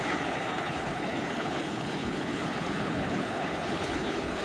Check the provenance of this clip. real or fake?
fake